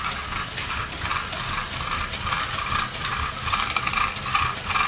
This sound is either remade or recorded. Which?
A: recorded